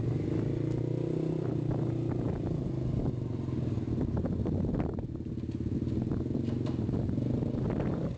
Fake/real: real